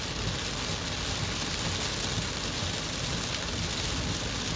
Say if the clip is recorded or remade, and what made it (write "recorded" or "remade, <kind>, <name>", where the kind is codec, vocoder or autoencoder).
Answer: recorded